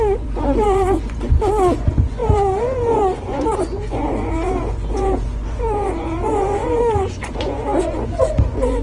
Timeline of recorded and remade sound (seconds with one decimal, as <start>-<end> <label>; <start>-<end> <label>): 0.0-8.8 remade